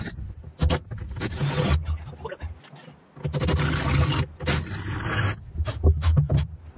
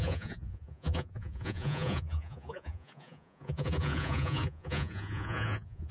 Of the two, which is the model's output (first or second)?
second